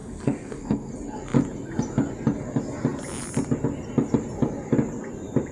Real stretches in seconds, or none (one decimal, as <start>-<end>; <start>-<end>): 0.9-5.5